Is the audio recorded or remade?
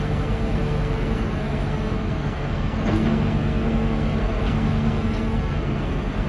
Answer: remade